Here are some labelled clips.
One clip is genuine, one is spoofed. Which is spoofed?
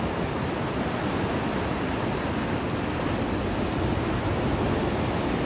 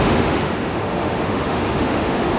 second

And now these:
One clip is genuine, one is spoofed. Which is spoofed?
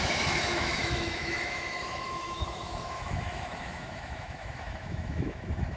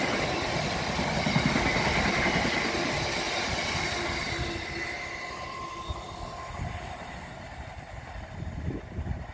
first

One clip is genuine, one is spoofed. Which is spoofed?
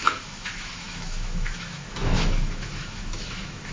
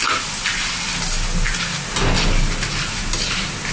first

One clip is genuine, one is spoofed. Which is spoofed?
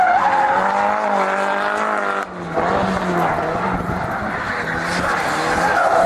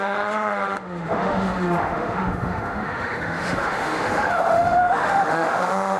second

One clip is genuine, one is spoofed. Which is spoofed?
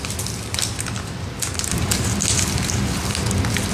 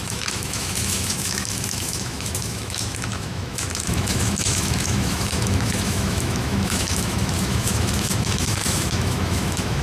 second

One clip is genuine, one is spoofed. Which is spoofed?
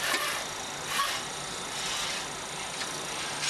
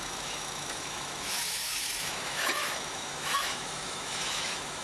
second